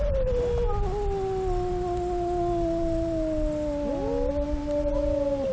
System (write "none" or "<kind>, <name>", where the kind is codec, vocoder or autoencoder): none